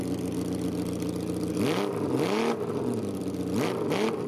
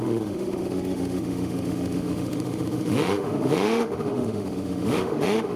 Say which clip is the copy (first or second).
second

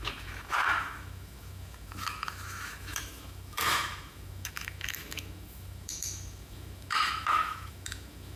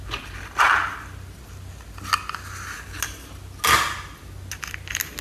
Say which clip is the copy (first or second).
first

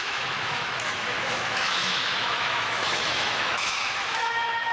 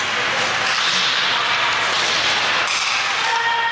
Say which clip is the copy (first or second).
first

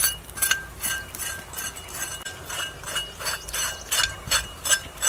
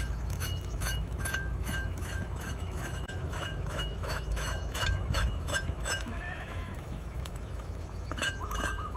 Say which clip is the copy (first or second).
second